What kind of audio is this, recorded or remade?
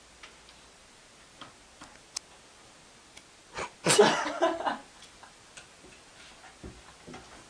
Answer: recorded